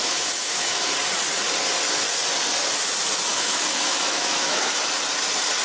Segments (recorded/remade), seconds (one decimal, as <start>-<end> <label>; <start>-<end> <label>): 0.0-0.9 remade; 0.9-3.3 recorded; 3.3-4.7 remade; 4.7-5.6 recorded